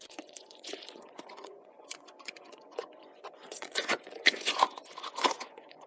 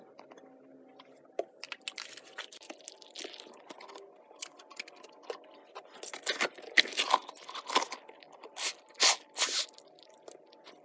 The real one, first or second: second